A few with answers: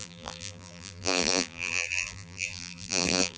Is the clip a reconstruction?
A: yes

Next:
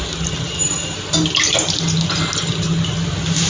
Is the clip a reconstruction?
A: no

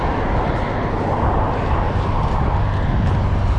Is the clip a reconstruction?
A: no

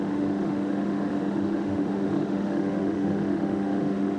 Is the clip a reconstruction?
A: yes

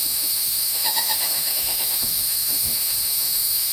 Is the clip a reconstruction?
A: yes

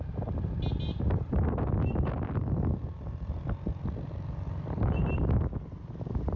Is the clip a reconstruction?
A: no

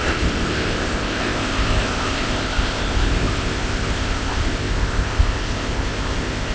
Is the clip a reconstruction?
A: yes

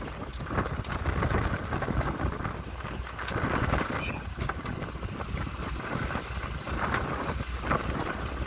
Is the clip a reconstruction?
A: no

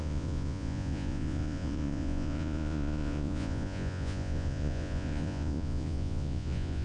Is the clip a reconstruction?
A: yes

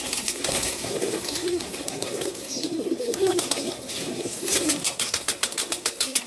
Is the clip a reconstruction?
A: yes